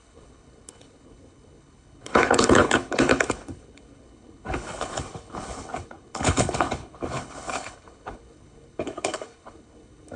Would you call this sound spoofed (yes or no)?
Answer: yes